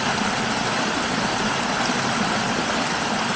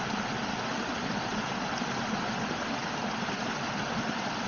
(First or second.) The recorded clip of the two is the second